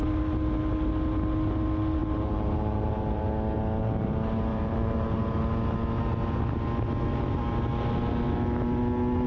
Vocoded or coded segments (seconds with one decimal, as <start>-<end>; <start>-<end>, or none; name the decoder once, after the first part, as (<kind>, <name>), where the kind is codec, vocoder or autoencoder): 2.0-3.2 (vocoder, BigVGAN v2); 4.5-5.4